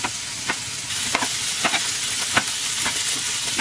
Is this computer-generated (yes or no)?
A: no